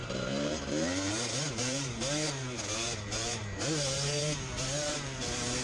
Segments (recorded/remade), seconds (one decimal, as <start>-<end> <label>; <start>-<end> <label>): 0.0-5.6 remade

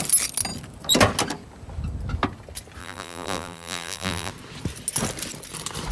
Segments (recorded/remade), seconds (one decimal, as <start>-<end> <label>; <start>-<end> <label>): 0.0-2.8 recorded; 2.8-4.3 remade; 4.3-5.9 recorded

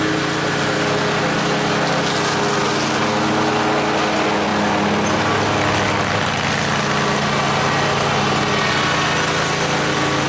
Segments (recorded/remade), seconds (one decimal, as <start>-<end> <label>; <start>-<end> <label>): 0.0-10.3 recorded